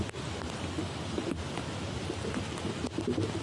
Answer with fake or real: real